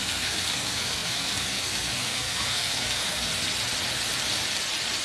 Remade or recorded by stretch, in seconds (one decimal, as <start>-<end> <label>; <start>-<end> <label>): 0.0-3.3 remade; 3.3-5.0 recorded